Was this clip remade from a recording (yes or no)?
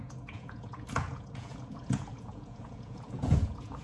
yes